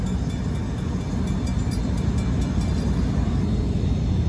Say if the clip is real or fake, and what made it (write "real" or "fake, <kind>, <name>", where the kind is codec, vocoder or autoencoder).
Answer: real